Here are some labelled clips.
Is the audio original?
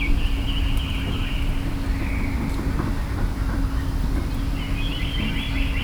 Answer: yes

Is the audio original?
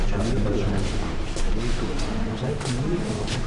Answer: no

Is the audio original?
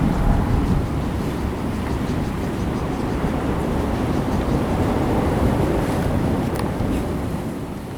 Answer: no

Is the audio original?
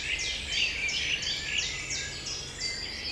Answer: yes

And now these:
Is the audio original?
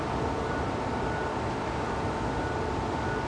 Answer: yes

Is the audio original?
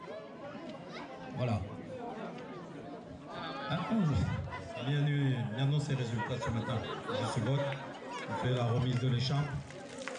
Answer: yes